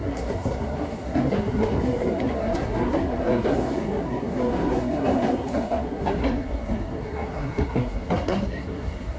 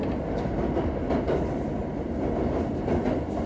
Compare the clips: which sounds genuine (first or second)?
second